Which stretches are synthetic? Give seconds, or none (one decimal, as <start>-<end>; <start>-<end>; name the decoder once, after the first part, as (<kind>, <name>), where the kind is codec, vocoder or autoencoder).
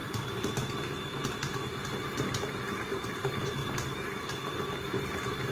2.9-3.6 (vocoder, BigVGAN v2); 4.2-5.5